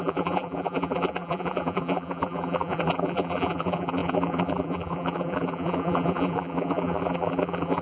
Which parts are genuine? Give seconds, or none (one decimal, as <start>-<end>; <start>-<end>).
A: none